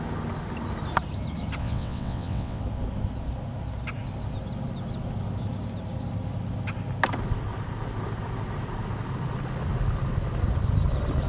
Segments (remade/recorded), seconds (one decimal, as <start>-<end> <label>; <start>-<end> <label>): 0.0-1.6 recorded; 1.6-2.6 remade; 2.6-11.3 recorded